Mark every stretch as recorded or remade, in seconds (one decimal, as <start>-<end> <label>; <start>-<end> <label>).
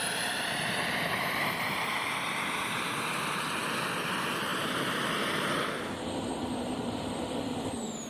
0.0-3.6 remade; 3.6-4.1 recorded; 4.1-8.1 remade